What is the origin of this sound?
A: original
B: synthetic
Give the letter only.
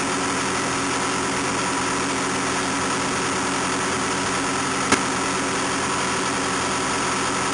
A